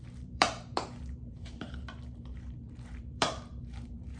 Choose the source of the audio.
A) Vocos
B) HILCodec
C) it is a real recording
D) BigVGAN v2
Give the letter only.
D